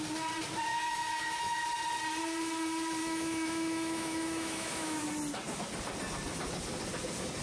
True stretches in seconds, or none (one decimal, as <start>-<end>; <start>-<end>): 0.0-0.7; 1.6-3.0; 5.0-7.4